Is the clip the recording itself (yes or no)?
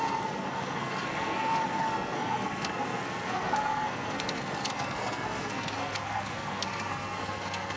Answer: no